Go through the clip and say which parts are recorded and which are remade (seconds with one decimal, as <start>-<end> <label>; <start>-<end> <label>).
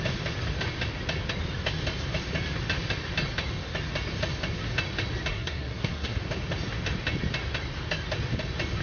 0.0-5.3 recorded; 5.3-6.2 remade; 6.2-8.8 recorded